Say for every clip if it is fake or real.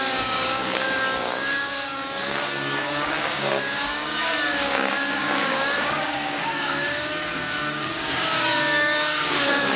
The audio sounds fake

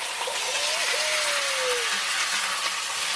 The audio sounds real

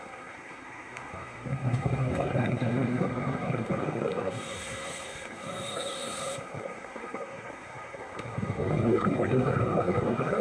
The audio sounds fake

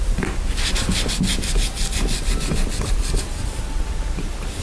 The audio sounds real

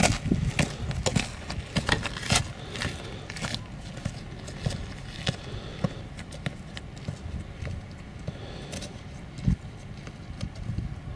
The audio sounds real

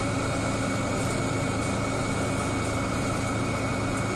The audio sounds real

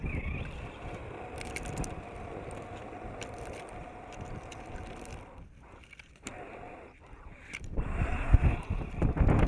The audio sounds fake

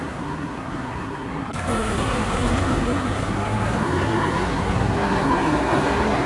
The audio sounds fake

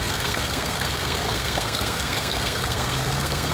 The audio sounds fake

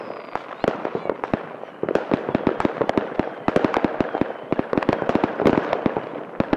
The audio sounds real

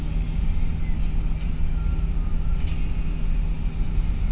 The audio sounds real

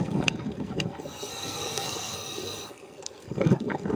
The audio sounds fake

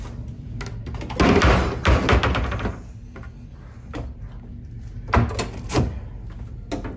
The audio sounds real